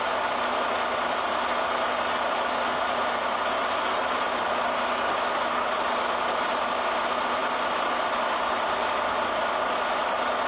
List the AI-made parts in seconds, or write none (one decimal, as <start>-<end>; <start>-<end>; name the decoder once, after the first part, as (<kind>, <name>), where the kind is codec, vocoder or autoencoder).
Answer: none